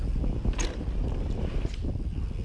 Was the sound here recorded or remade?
recorded